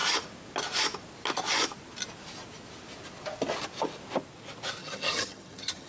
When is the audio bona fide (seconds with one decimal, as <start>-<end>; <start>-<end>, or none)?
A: 0.0-4.8